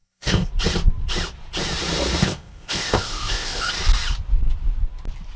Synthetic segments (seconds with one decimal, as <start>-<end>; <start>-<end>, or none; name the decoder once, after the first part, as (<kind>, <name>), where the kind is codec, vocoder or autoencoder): 0.0-0.5 (codec, ZipCodec); 2.2-3.7